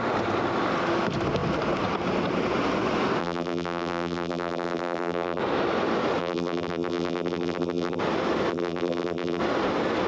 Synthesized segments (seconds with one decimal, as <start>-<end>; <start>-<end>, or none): 3.2-5.4; 6.2-8.0; 8.5-9.4